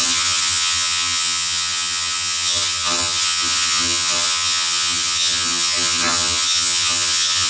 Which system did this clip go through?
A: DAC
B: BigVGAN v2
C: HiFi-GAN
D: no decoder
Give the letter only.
C